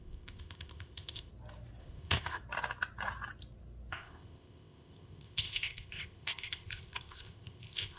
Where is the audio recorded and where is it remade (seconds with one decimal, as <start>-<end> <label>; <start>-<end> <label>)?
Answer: 0.0-1.3 remade; 1.3-1.8 recorded; 1.8-2.4 remade; 2.4-3.9 recorded; 3.9-8.0 remade